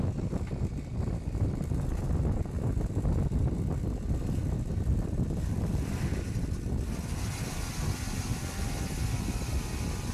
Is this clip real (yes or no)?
yes